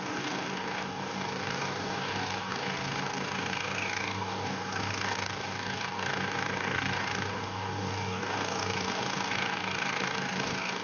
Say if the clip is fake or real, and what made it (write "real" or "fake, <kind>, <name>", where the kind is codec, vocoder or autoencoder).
fake, codec, DAC